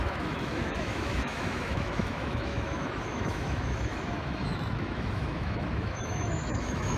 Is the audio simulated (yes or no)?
yes